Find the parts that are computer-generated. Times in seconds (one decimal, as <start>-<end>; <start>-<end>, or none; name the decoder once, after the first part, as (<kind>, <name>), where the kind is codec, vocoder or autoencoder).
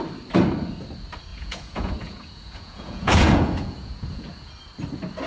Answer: 1.3-4.5 (vocoder, Vocos)